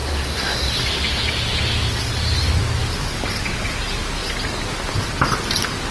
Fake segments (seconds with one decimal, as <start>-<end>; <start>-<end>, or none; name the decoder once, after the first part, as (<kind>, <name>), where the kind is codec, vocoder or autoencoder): 0.0-2.8 (vocoder, BigVGAN v2); 3.4-5.9